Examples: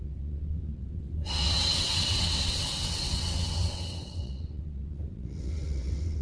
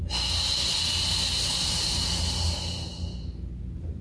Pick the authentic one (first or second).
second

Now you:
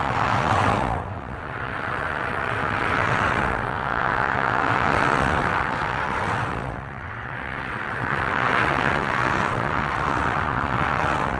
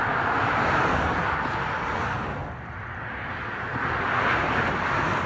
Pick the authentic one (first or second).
second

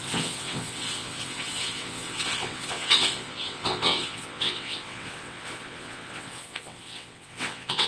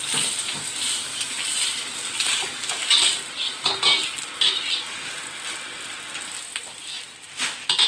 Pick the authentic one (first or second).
second